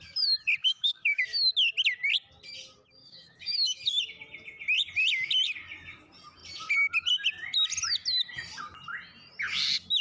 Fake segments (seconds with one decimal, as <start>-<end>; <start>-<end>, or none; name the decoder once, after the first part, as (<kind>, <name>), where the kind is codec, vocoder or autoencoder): 0.6-1.2 (codec, DAC); 3.0-3.8